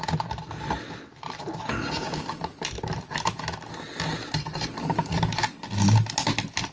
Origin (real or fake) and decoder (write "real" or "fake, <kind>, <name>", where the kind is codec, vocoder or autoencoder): real